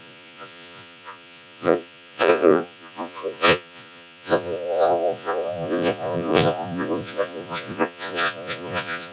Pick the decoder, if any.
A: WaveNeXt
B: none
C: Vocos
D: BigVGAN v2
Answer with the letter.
C